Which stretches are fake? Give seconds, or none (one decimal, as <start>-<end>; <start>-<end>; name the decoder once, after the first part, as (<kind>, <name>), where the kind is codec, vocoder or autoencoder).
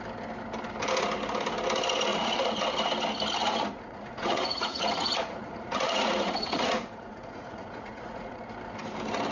2.1-2.6 (vocoder, Vocos); 3.4-8.4